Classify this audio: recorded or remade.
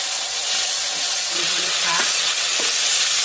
remade